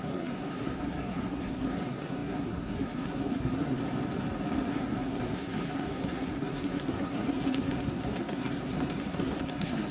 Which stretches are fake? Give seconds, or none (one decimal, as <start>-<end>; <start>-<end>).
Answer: 0.0-3.8; 4.7-9.9